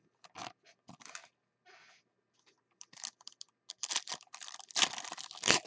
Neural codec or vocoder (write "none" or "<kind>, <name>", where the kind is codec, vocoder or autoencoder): none